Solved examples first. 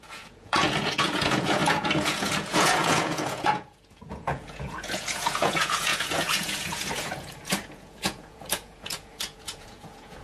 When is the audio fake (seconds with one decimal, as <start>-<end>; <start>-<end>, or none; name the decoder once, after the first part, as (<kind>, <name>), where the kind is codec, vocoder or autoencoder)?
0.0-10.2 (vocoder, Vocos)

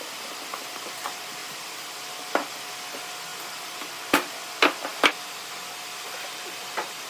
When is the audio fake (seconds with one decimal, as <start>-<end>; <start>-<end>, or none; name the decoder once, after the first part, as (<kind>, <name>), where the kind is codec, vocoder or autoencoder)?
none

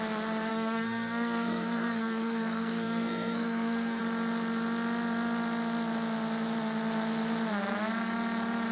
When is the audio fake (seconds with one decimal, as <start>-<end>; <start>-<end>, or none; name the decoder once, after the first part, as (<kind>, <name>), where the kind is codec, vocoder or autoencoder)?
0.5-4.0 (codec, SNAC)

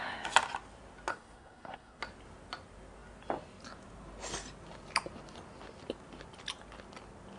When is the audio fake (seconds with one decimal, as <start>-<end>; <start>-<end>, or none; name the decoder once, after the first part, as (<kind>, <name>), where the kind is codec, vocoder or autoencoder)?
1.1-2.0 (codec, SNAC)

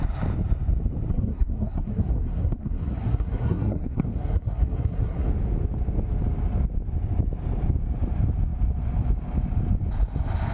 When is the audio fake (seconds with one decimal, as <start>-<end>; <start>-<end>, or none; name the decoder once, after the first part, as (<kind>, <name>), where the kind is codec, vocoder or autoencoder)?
1.1-5.3 (codec, SNAC)

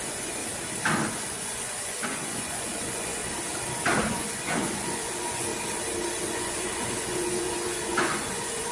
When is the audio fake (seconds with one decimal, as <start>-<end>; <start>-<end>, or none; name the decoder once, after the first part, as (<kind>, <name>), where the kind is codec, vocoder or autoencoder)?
0.0-0.4 (vocoder, Vocos); 1.1-3.2; 4.1-5.5; 6.2-8.7